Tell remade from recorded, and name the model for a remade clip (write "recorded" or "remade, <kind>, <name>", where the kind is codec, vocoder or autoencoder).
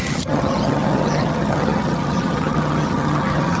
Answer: remade, vocoder, HiFi-GAN